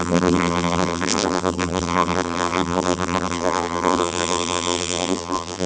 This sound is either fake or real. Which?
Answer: fake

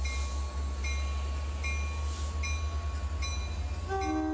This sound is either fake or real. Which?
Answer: real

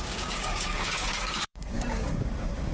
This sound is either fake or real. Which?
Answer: fake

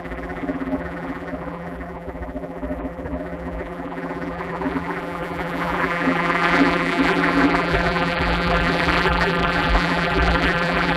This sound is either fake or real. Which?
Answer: fake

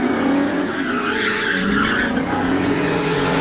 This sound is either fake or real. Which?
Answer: fake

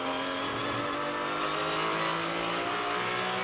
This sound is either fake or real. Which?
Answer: real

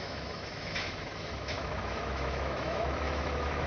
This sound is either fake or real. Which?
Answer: fake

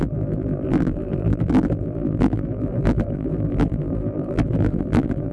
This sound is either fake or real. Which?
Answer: fake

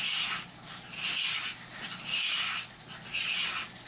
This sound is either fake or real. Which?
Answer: real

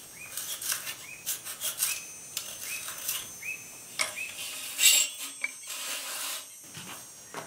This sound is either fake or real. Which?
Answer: real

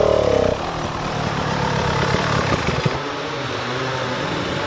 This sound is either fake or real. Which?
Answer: real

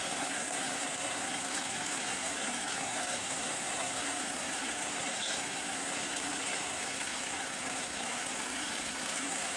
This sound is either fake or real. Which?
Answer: fake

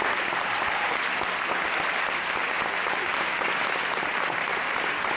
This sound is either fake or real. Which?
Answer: real